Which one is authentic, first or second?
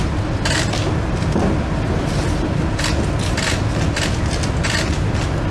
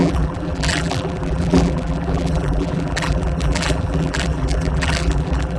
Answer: first